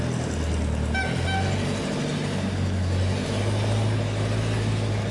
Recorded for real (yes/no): yes